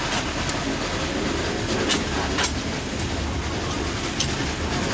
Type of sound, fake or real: real